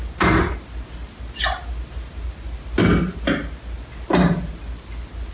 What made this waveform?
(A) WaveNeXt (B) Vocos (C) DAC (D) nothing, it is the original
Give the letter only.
D